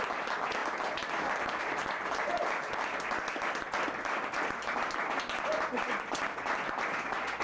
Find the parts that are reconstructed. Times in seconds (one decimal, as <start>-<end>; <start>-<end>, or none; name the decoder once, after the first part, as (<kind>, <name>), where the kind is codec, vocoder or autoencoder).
none